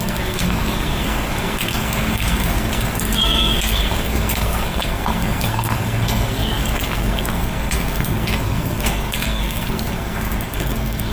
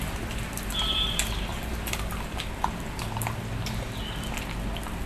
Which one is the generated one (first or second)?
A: first